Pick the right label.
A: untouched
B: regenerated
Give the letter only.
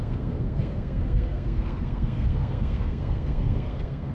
B